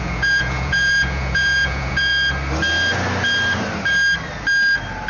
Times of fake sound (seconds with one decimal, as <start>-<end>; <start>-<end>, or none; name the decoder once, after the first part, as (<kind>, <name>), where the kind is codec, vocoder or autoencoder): 0.0-2.1 (vocoder, Vocos)